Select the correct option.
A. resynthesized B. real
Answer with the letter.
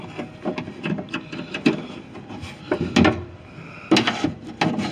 B